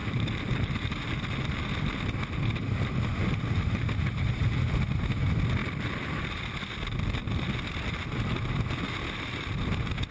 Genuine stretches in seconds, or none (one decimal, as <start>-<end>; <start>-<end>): 1.0-5.6; 6.6-7.2; 8.9-10.1